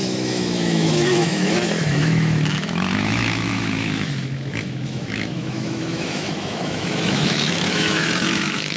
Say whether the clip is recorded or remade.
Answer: remade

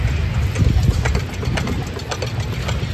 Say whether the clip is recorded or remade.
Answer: recorded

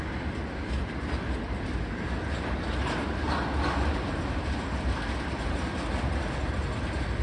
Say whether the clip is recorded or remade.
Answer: recorded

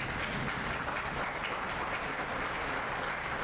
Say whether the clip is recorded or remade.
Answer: recorded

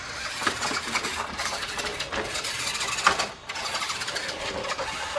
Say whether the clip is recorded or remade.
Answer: recorded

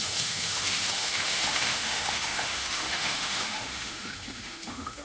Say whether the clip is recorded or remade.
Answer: remade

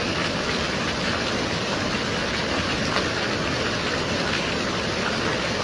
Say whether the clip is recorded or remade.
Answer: recorded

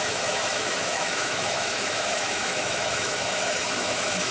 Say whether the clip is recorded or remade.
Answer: remade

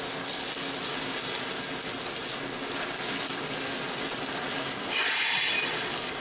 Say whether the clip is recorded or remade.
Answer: recorded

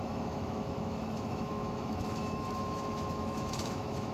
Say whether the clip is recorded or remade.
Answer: remade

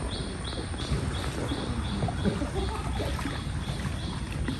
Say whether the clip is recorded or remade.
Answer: recorded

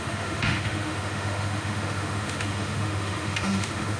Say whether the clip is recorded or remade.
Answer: remade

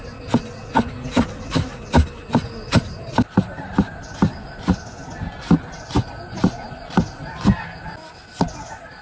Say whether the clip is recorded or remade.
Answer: recorded